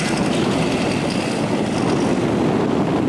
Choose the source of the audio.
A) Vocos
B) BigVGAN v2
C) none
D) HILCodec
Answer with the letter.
C